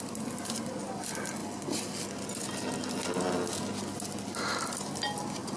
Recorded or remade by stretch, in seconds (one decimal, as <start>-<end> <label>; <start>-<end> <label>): 0.0-5.6 recorded